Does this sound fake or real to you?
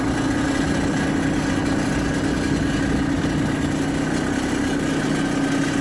real